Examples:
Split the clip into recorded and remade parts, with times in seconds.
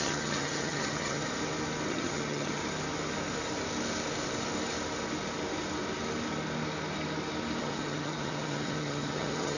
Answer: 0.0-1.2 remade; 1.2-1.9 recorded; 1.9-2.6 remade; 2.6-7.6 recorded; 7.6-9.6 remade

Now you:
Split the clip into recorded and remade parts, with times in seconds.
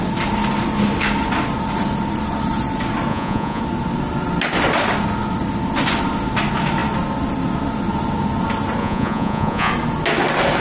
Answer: 0.0-3.1 recorded; 3.1-3.6 remade; 3.6-8.8 recorded; 8.8-9.7 remade; 9.7-10.6 recorded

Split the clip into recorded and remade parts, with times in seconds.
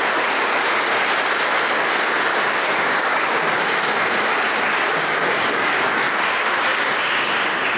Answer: 0.0-2.3 recorded; 2.3-4.0 remade; 4.0-4.9 recorded; 4.9-6.3 remade; 6.3-6.7 recorded; 6.7-7.3 remade; 7.3-7.8 recorded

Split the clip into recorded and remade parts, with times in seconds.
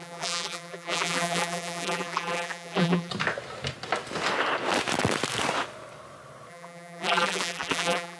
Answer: 0.0-3.1 remade; 3.1-6.5 recorded; 6.5-8.2 remade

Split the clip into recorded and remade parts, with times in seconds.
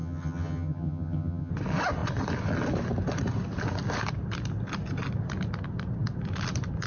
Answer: 0.0-1.5 remade; 1.5-6.9 recorded